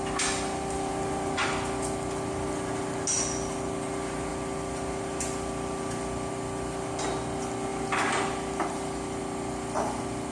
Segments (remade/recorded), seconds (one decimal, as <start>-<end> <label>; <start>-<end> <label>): 0.0-4.3 recorded; 4.3-6.3 remade; 6.3-7.7 recorded; 7.7-9.2 remade; 9.2-10.3 recorded